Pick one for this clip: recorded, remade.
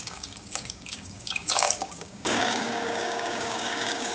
remade